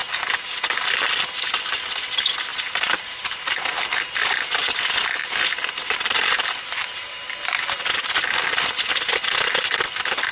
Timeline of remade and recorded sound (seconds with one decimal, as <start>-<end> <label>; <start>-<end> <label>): 0.0-0.8 remade; 0.8-2.5 recorded; 2.5-3.8 remade; 3.8-5.2 recorded; 5.2-7.3 remade; 7.3-10.3 recorded

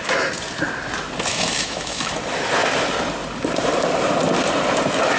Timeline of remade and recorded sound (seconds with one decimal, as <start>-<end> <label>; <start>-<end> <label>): 0.0-1.3 recorded; 1.3-2.1 remade; 2.1-5.2 recorded

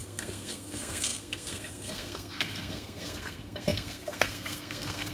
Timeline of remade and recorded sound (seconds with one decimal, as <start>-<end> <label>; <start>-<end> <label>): 0.0-5.1 remade

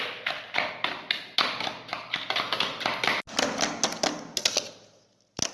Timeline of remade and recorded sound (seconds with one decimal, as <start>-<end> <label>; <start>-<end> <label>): 0.0-5.5 recorded

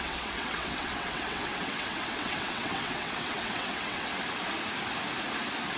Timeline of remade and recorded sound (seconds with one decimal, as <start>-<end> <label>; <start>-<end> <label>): 0.0-4.1 remade; 4.1-5.8 recorded

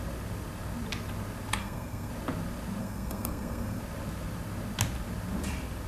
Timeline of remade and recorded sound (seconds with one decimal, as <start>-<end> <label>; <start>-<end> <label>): 0.0-1.6 recorded; 1.6-2.1 remade; 2.1-2.8 recorded; 2.8-3.8 remade; 3.8-5.9 recorded

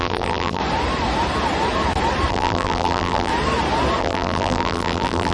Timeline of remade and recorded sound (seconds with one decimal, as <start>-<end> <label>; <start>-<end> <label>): 0.0-0.6 remade; 0.6-2.3 recorded; 2.3-3.3 remade; 3.3-4.0 recorded; 4.0-5.3 remade

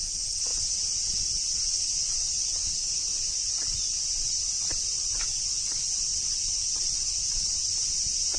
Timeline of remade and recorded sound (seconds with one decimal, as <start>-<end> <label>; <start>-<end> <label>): 0.0-8.4 recorded